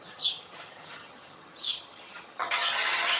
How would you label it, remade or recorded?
remade